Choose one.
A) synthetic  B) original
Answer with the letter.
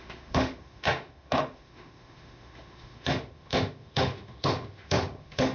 A